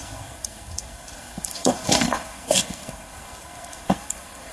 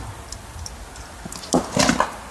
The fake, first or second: first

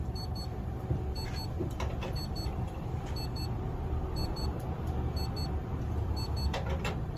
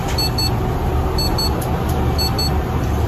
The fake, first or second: first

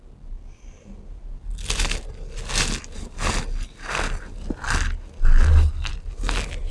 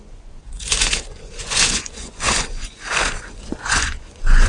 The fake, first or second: second